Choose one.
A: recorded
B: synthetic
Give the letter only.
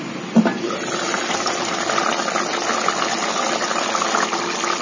A